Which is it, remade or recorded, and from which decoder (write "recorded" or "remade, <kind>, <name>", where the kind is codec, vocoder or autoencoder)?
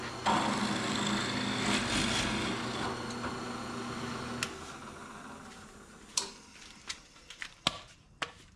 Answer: recorded